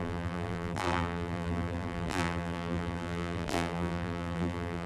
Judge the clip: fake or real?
fake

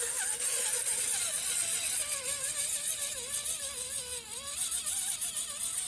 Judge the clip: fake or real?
real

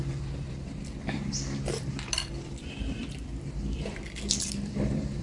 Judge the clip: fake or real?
fake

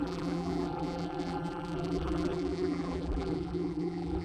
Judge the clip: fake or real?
fake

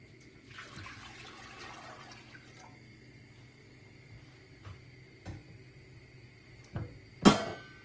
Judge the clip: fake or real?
real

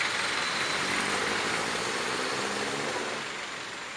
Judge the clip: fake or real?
real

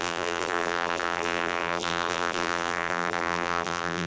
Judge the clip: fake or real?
fake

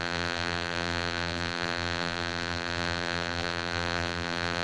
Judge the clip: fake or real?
fake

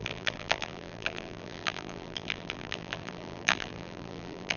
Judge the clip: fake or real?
fake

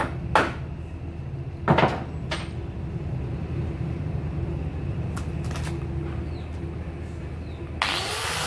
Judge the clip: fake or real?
real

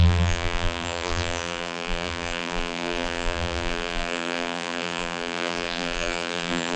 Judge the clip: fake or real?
fake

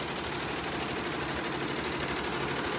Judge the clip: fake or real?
real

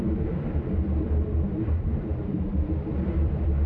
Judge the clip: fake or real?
fake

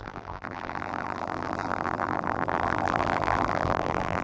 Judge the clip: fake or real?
fake